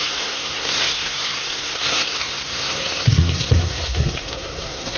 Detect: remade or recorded remade